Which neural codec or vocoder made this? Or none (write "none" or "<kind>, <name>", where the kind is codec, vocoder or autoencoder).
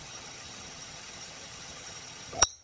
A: vocoder, HiFi-GAN